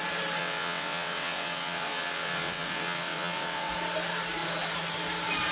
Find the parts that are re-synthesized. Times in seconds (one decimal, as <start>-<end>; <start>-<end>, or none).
0.4-3.7